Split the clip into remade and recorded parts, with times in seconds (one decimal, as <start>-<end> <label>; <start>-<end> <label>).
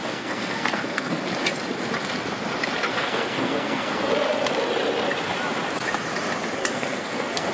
0.0-1.2 remade; 1.2-2.9 recorded; 2.9-4.1 remade; 4.1-6.6 recorded; 6.6-7.5 remade